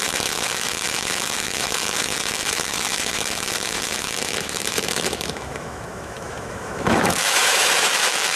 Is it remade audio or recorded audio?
remade